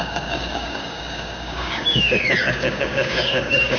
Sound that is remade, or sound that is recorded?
remade